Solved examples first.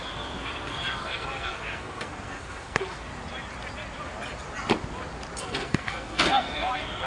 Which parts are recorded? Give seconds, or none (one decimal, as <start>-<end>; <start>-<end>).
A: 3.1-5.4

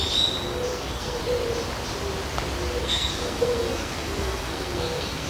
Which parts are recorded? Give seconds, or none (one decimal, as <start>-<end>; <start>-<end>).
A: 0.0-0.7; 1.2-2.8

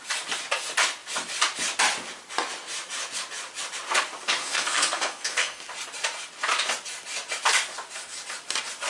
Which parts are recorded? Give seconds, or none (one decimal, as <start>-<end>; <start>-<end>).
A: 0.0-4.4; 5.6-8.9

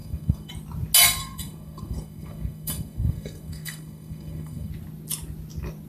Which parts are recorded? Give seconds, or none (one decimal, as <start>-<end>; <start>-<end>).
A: 0.5-1.2; 4.7-5.9